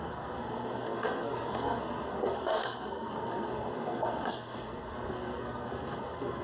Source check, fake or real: fake